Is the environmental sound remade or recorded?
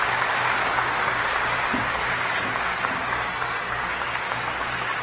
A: remade